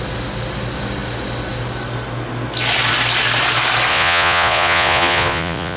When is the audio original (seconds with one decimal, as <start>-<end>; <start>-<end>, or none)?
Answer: 0.0-3.9